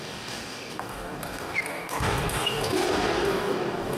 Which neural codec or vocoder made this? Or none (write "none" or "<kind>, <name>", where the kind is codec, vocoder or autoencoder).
codec, DAC